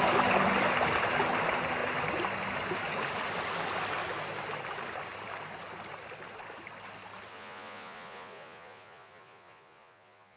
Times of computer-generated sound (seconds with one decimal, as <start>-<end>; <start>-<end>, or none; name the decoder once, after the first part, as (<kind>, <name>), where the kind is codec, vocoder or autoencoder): 7.3-10.4 (vocoder, Vocos)